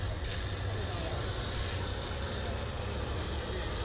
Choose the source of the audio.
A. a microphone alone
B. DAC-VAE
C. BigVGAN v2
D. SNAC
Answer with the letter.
A